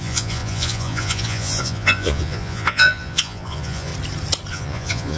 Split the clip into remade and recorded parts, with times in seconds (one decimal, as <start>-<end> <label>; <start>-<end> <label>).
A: 0.0-3.9 remade; 3.9-4.5 recorded; 4.5-5.2 remade